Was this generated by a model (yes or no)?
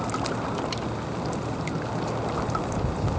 no